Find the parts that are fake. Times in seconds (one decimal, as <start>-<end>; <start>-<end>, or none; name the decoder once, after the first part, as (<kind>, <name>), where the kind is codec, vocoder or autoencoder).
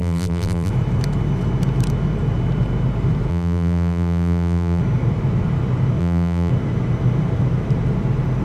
0.0-0.7 (vocoder, BigVGAN v2); 3.3-4.8; 6.0-6.5